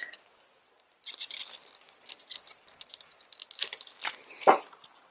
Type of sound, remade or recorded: recorded